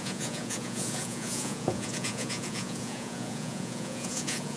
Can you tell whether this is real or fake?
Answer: fake